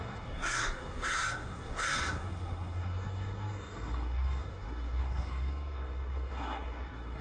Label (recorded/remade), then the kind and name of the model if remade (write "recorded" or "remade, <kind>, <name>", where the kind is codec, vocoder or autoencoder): remade, codec, SNAC